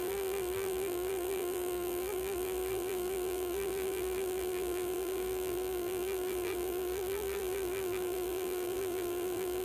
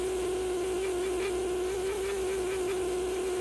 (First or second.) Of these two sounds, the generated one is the first